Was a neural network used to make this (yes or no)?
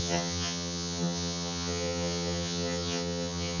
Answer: yes